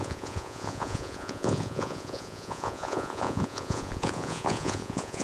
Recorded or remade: remade